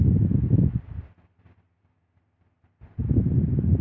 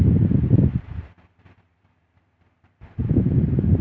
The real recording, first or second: first